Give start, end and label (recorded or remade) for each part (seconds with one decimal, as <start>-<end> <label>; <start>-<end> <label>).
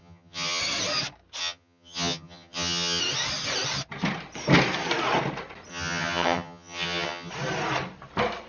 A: 0.0-0.6 remade; 0.6-1.4 recorded; 1.4-3.0 remade; 3.0-5.7 recorded; 5.7-7.3 remade; 7.3-8.5 recorded